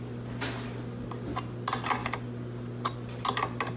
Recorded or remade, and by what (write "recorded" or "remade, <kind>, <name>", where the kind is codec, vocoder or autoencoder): recorded